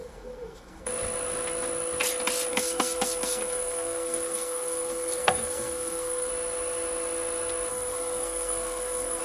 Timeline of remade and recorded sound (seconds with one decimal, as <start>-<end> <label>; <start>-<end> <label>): 0.0-0.9 remade; 0.9-2.5 recorded; 2.5-6.3 remade; 6.3-7.7 recorded; 7.7-9.2 remade